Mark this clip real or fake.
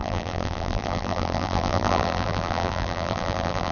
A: fake